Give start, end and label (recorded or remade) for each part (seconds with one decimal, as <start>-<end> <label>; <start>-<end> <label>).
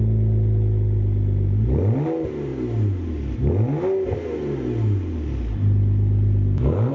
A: 0.0-6.9 recorded